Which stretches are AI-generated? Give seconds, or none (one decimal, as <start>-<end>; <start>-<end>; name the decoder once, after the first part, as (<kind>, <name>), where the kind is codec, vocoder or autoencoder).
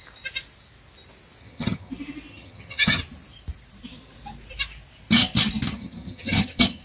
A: 1.4-1.9 (vocoder, HiFi-GAN); 2.3-3.0; 5.7-6.8